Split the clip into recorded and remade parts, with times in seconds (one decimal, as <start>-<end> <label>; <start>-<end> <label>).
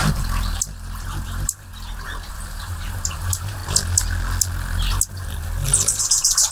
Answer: 0.0-1.7 remade; 1.7-2.3 recorded; 2.3-3.6 remade; 3.6-6.0 recorded; 6.0-6.5 remade